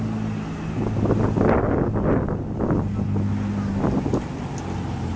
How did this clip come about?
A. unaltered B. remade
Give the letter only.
A